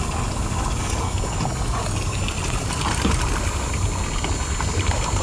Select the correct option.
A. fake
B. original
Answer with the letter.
B